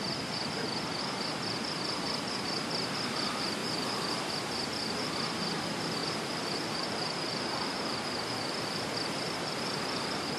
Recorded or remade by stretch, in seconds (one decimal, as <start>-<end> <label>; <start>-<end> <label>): 0.0-3.6 recorded; 3.6-4.3 remade; 4.3-6.0 recorded; 6.0-9.5 remade; 9.5-10.4 recorded